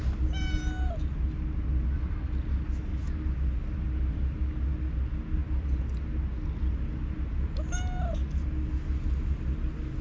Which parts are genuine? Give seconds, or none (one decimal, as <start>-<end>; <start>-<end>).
0.0-10.0